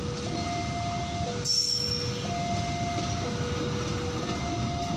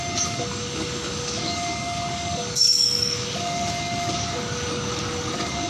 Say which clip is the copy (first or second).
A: second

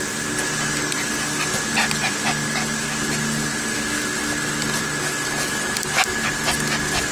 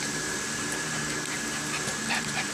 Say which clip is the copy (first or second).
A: second